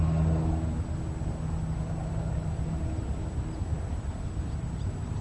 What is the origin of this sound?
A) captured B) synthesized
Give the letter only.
A